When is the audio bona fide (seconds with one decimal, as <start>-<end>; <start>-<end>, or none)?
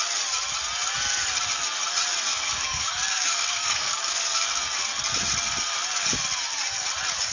0.0-2.3; 4.6-7.3